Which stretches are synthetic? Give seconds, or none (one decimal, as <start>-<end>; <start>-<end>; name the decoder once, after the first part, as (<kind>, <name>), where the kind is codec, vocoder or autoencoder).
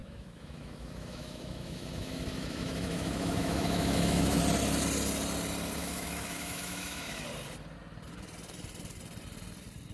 0.0-4.4 (autoencoder, DAC-VAE); 5.8-7.2